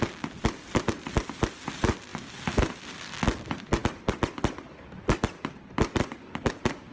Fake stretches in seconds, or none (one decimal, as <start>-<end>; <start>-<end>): none